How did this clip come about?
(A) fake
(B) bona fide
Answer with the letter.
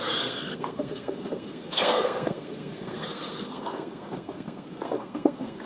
A